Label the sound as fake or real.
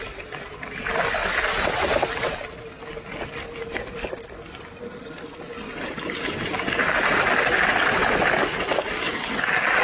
real